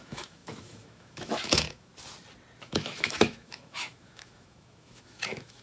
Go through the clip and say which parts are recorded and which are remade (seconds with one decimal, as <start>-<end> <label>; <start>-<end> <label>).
0.0-1.9 remade; 1.9-2.6 recorded; 2.6-5.6 remade